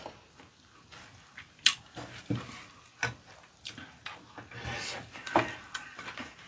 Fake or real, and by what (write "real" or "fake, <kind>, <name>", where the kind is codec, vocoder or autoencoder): real